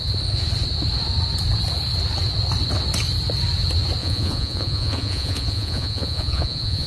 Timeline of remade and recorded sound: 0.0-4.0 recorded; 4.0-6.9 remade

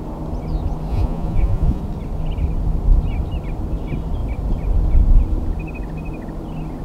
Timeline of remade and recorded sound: 0.0-0.9 recorded; 0.9-1.8 remade; 1.8-6.8 recorded

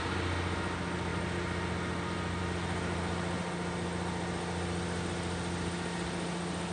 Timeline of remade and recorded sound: 0.0-6.7 recorded

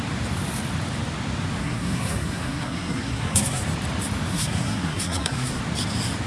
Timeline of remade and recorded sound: 0.0-1.6 recorded; 1.6-3.6 remade; 3.6-4.3 recorded; 4.3-5.6 remade; 5.6-6.3 recorded

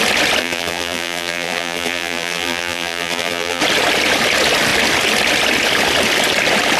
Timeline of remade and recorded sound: 0.0-0.4 recorded; 0.4-3.6 remade; 3.6-6.8 recorded

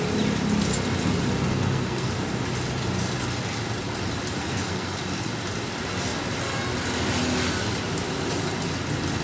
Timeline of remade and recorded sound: 0.0-1.5 recorded; 1.5-2.1 remade; 2.1-4.4 recorded; 4.4-5.0 remade; 5.0-9.2 recorded

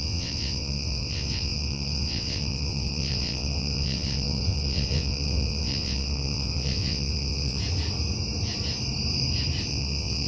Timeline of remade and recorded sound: 0.0-7.6 remade; 7.6-9.7 recorded; 9.7-10.3 remade